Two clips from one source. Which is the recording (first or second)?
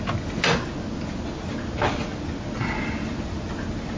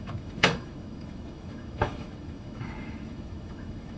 first